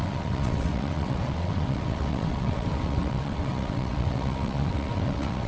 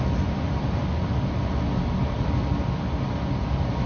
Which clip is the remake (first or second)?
first